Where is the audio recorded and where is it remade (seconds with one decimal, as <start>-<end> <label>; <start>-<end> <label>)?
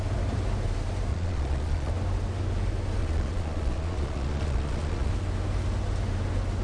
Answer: 0.0-1.1 recorded; 1.1-1.9 remade; 1.9-3.0 recorded; 3.0-5.1 remade; 5.1-6.6 recorded